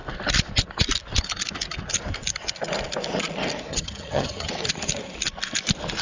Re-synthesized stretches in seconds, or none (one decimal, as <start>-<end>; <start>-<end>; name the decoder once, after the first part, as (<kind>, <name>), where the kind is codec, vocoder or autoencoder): 3.7-4.5 (vocoder, HiFi-GAN)